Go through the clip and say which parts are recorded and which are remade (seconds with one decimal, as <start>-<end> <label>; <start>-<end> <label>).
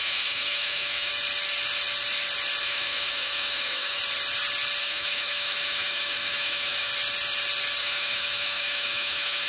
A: 0.0-1.1 remade; 1.1-2.6 recorded; 2.6-4.0 remade; 4.0-4.8 recorded; 4.8-6.9 remade; 6.9-7.8 recorded; 7.8-9.5 remade